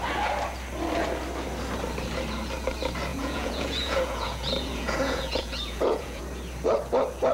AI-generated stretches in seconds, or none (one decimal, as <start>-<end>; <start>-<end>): 3.1-6.2